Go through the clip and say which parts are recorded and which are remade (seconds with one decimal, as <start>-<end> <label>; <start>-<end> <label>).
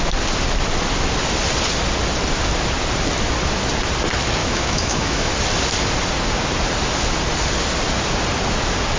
0.0-4.4 recorded; 4.4-5.3 remade; 5.3-9.0 recorded